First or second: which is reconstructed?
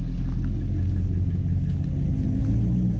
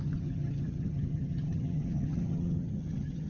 second